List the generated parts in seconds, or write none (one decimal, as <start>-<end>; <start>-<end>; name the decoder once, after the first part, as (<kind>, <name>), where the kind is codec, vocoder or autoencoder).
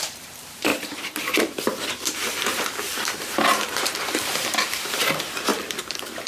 0.0-6.3 (vocoder, BigVGAN v2)